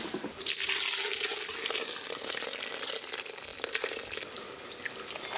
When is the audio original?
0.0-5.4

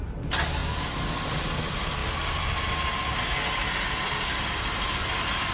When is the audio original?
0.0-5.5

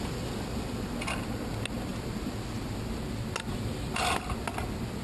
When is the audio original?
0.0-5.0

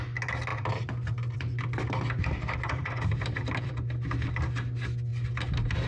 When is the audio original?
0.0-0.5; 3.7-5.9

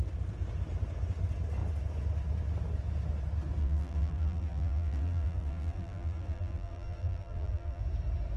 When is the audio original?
0.0-3.6; 7.8-8.4

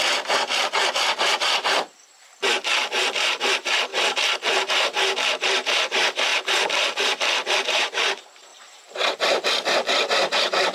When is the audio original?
none

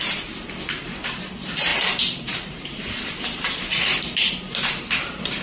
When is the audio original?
none

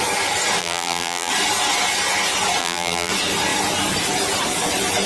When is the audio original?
0.0-0.6; 1.3-2.6; 3.1-5.1